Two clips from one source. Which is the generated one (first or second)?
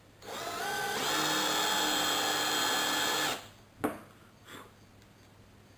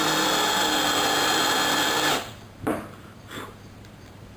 second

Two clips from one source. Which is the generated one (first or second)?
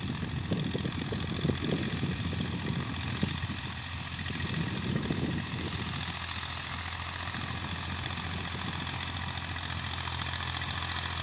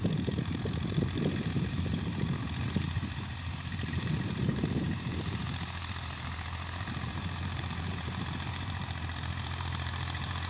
second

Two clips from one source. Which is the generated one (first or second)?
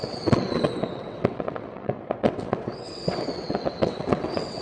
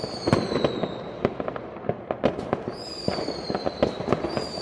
first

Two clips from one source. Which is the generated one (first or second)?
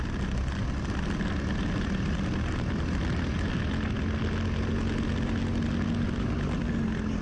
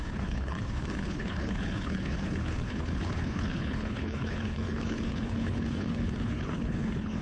second